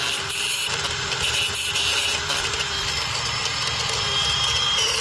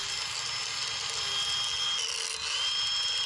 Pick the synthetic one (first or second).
first